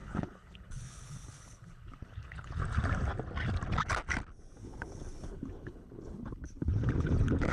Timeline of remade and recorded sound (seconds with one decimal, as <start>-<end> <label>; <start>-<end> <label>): 0.0-2.6 remade; 2.6-4.6 recorded; 4.6-7.5 remade